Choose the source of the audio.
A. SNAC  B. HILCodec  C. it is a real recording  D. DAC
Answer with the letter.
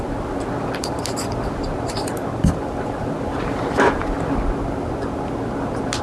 C